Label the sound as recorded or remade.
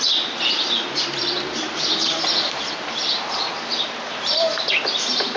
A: remade